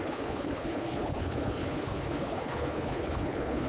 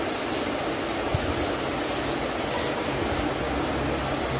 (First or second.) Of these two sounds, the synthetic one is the first